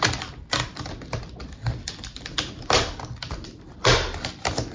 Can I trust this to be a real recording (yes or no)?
no